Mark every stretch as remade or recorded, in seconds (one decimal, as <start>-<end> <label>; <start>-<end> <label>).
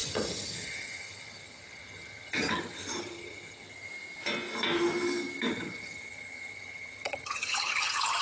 0.0-3.9 remade; 3.9-5.5 recorded; 5.5-8.2 remade